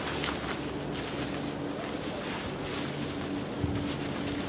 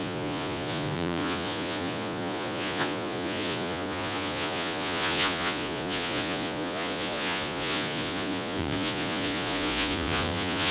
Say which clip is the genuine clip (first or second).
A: first